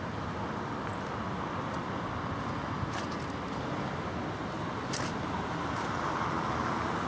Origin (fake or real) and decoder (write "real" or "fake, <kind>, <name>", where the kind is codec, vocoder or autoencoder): real